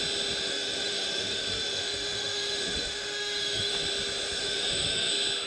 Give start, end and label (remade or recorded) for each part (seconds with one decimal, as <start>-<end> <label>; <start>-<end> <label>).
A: 0.0-0.4 recorded; 0.4-3.7 remade; 3.7-4.4 recorded; 4.4-5.1 remade; 5.1-5.5 recorded